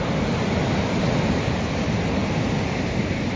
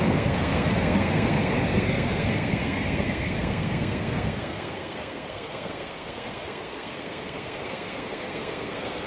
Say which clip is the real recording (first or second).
first